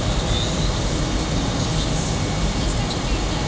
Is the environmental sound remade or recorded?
recorded